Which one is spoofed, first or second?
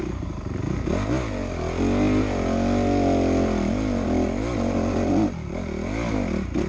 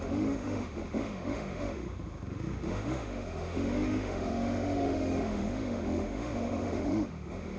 second